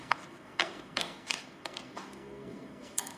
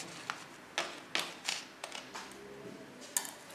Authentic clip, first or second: second